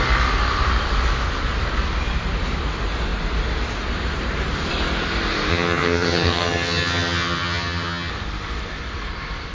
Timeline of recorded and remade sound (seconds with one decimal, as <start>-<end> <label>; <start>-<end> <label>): 0.0-5.5 recorded; 5.5-8.1 remade; 8.1-9.5 recorded